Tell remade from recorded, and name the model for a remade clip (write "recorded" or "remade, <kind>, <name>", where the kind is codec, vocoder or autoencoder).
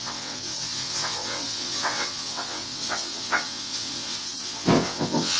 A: remade, vocoder, WaveNeXt